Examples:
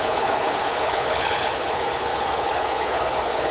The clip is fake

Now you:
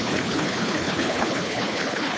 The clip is fake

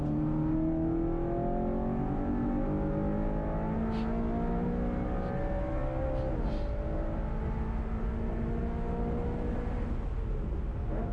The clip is real